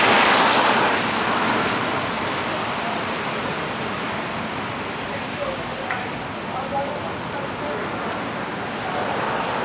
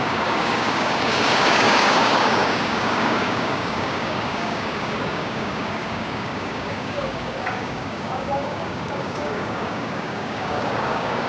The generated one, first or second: second